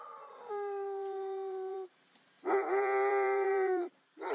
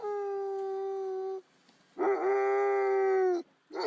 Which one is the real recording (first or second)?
second